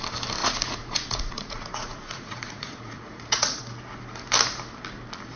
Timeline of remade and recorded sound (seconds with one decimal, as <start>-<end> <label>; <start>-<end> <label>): 0.0-0.4 recorded; 0.4-3.6 remade; 3.6-5.4 recorded